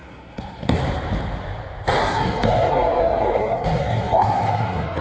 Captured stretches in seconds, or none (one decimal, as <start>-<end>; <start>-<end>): 0.8-2.0